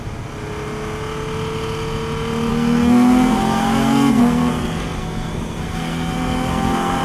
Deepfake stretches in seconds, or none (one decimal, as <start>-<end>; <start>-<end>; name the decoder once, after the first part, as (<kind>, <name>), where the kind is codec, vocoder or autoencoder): 2.5-7.0 (codec, SNAC)